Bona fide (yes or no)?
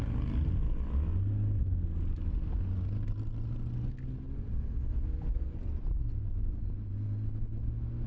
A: yes